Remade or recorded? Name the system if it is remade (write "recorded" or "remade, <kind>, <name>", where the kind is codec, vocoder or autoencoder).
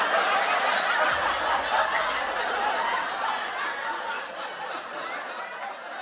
recorded